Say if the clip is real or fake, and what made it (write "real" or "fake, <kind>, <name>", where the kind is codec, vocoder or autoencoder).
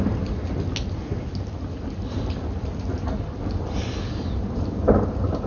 real